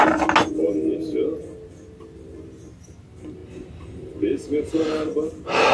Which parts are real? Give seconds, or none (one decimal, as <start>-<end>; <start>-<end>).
0.0-5.7